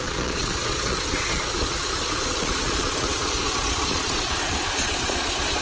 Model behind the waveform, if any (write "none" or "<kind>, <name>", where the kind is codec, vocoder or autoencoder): vocoder, Vocos